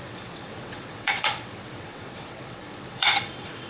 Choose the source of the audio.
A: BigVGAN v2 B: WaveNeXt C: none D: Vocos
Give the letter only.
B